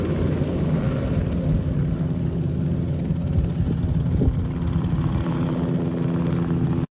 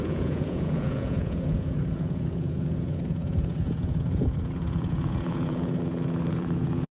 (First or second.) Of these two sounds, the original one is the first